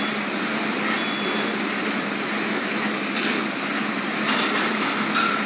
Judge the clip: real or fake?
real